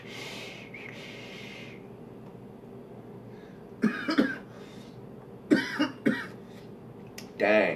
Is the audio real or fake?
real